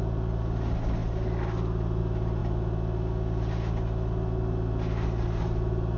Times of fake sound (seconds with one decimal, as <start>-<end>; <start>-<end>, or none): none